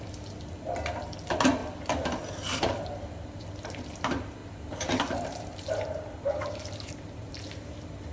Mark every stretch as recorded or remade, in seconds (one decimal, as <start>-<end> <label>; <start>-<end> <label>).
0.0-4.4 recorded; 4.4-7.3 remade; 7.3-8.1 recorded

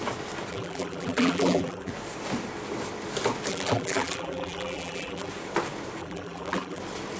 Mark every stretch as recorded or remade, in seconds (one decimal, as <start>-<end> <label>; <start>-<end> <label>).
0.0-0.5 recorded; 0.5-1.9 remade; 1.9-3.5 recorded; 3.5-5.3 remade; 5.3-6.0 recorded; 6.0-6.8 remade; 6.8-7.2 recorded